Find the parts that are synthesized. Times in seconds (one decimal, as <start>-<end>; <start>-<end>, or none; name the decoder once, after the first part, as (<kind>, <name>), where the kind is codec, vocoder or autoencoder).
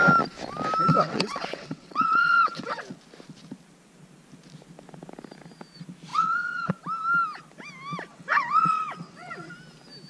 0.9-2.8 (vocoder, WaveNeXt); 6.1-6.7; 8.1-9.5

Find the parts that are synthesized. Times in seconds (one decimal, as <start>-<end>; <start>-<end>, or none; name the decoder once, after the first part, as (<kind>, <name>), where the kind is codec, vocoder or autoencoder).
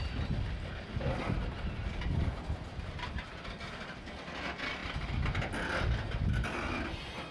none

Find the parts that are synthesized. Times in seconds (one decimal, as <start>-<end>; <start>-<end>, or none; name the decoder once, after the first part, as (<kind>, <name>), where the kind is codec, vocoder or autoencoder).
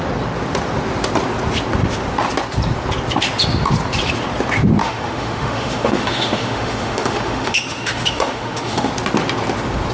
4.8-8.9 (autoencoder, DAC-VAE)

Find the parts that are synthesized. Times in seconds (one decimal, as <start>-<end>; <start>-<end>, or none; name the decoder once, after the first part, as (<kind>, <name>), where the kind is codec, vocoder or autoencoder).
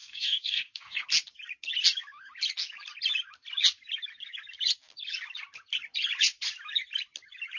0.0-1.1 (codec, DAC)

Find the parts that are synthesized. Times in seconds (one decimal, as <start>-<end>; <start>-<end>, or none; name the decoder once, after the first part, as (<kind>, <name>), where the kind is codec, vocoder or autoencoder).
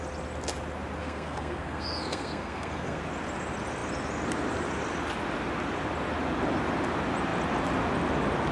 1.0-3.0 (codec, SNAC)